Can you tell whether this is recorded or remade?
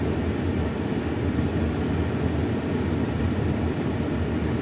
recorded